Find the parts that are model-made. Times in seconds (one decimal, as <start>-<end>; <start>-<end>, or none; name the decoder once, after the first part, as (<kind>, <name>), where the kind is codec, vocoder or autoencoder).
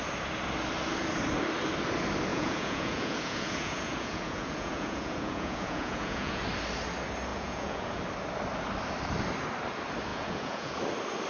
2.3-6.4 (vocoder, Vocos); 7.3-8.0; 10.1-10.8